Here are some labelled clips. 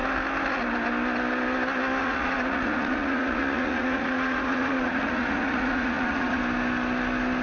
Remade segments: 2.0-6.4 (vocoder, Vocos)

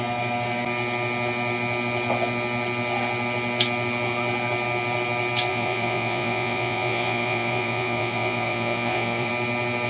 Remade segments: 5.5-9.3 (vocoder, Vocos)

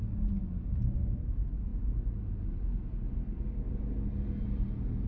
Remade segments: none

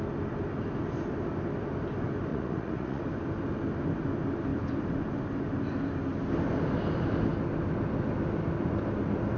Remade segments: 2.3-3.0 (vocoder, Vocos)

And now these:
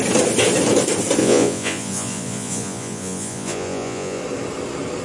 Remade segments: 1.2-4.2 (vocoder, Vocos)

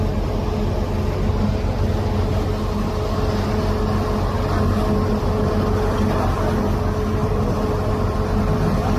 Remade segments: none